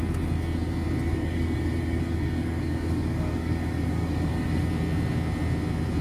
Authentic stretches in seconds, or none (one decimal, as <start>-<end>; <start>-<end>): 0.0-1.1; 4.7-6.0